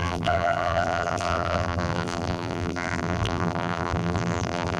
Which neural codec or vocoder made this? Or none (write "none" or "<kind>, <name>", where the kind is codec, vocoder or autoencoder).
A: vocoder, BigVGAN v2